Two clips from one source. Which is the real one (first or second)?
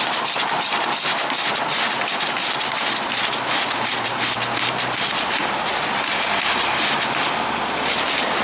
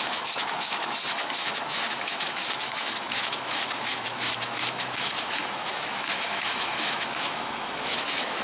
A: first